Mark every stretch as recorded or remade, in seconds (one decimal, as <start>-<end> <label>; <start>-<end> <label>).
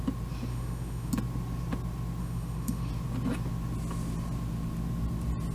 0.0-0.5 recorded; 0.5-1.1 remade; 1.1-2.2 recorded; 2.2-2.9 remade; 2.9-5.5 recorded